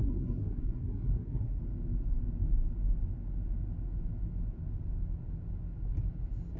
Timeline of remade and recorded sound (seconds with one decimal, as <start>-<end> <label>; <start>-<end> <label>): 0.0-1.6 remade; 1.6-6.6 recorded